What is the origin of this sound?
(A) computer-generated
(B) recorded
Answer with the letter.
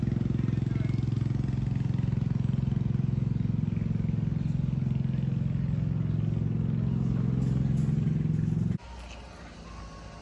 B